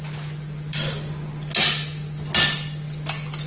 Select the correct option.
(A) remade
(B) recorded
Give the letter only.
B